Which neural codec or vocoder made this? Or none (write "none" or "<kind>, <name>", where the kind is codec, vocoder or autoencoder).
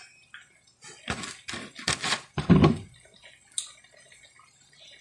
none